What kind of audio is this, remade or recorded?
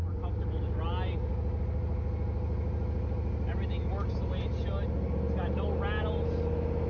recorded